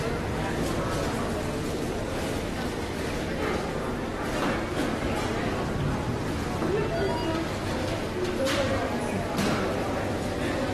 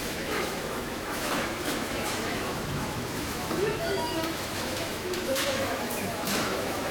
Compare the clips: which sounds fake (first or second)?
second